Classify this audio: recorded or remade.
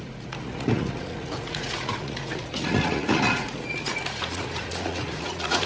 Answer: remade